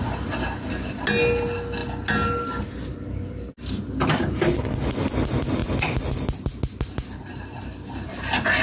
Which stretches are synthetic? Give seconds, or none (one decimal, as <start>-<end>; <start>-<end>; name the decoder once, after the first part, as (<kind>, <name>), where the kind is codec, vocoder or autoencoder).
none